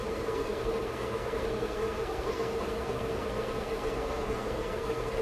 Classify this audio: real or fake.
fake